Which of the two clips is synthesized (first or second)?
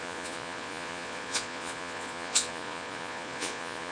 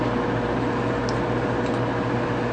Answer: first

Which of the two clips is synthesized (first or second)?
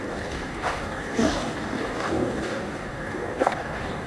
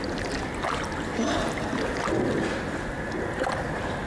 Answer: first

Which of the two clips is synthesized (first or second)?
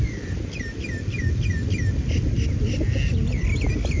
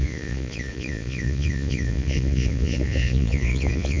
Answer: second